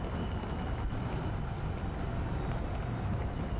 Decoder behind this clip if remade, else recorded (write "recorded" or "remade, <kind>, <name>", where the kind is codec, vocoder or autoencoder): recorded